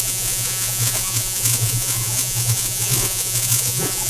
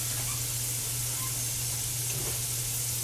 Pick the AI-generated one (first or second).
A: first